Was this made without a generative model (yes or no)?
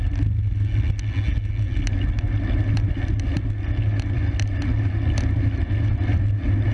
yes